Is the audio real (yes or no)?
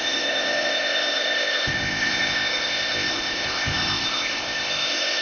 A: no